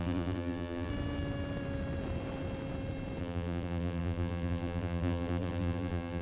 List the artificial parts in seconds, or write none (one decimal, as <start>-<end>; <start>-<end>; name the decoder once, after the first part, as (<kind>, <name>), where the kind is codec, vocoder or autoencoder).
0.0-0.9 (vocoder, BigVGAN v2); 3.2-6.2